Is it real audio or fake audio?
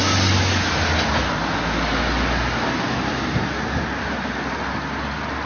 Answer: real